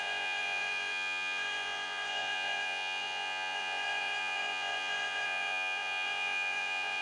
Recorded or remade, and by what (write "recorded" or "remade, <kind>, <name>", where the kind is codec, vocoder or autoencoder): remade, vocoder, Vocos